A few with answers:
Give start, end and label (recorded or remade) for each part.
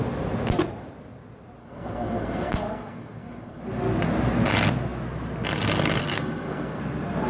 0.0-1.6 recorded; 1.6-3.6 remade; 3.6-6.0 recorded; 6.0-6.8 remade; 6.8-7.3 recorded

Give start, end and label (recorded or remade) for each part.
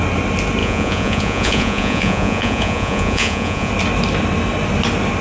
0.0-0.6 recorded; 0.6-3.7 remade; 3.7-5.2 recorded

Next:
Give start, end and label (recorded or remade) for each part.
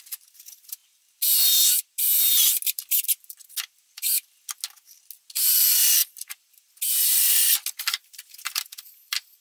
0.0-8.0 recorded; 8.0-9.4 remade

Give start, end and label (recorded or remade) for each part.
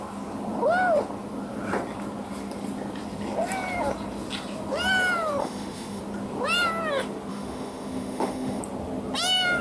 0.0-5.4 recorded; 5.4-6.0 remade; 6.0-7.3 recorded; 7.3-8.6 remade; 8.6-9.6 recorded